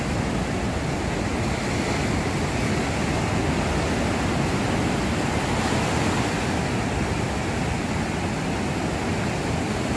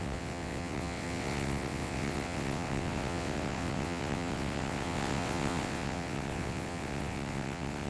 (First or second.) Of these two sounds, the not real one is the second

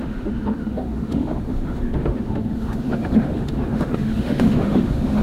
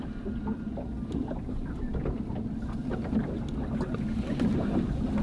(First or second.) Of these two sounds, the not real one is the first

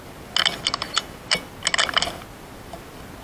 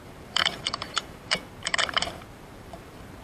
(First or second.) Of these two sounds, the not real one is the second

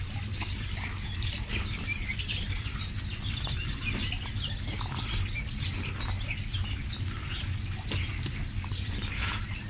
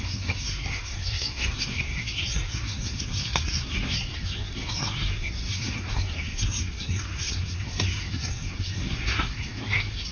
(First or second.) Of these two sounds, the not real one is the second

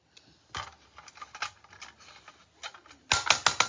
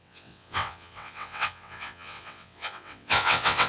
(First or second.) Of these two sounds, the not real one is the second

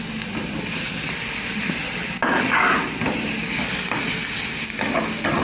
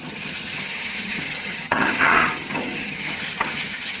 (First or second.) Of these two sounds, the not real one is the second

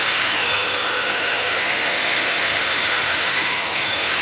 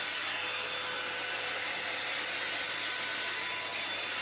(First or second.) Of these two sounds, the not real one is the first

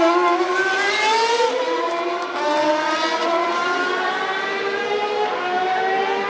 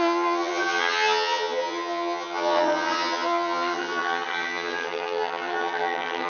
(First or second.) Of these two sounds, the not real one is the second